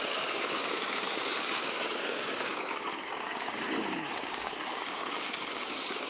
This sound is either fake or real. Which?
fake